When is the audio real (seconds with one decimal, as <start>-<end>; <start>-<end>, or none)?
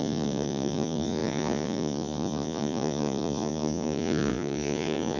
none